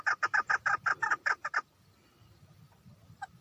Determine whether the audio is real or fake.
real